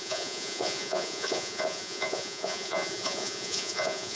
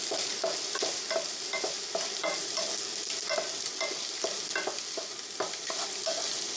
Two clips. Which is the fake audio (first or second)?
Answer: first